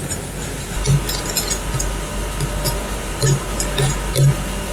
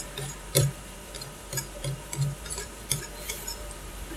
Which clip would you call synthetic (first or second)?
second